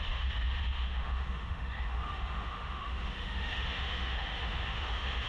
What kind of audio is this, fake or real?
fake